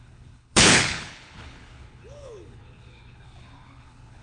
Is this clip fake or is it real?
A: fake